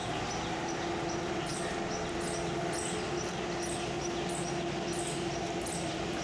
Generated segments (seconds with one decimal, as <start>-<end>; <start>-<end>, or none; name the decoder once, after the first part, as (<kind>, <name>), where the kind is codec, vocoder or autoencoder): none